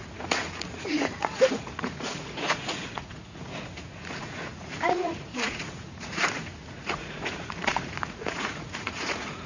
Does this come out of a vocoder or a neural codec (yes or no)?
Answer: yes